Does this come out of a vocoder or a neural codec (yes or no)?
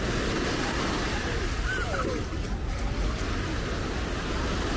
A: no